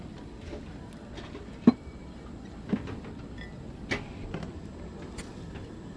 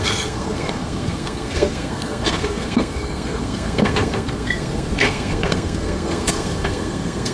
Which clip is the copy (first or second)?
second